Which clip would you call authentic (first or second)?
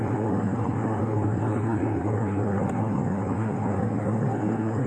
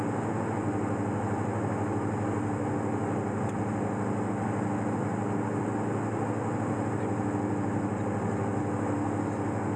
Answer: second